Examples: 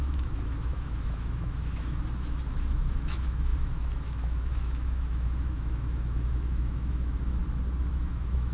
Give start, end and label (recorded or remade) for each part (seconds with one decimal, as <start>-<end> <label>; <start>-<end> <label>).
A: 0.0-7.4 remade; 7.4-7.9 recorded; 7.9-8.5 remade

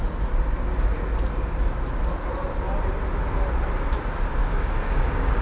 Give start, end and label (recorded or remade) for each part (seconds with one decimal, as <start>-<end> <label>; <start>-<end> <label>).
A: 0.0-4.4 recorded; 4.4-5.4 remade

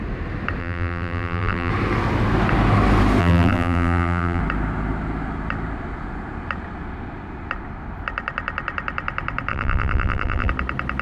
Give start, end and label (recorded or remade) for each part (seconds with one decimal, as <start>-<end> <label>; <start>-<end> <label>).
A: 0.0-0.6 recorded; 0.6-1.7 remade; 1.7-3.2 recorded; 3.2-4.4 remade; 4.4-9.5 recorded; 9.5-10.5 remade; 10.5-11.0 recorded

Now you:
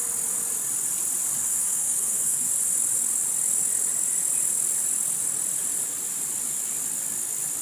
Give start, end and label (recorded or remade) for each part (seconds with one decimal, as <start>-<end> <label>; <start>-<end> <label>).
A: 0.0-1.4 recorded; 1.4-2.5 remade; 2.5-7.6 recorded

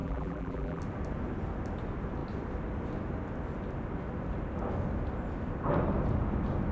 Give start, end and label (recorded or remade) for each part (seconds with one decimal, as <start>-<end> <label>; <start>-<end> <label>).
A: 0.0-0.8 remade; 0.8-6.7 recorded

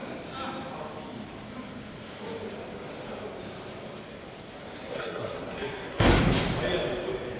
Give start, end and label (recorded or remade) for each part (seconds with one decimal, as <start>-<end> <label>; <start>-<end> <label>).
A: 0.0-4.8 recorded; 4.8-6.2 remade; 6.2-7.4 recorded

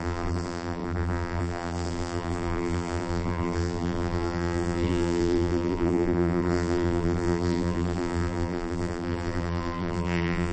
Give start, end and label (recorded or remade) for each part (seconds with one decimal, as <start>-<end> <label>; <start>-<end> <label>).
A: 0.0-10.5 remade